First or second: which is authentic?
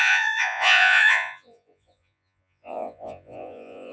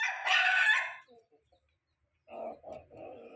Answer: second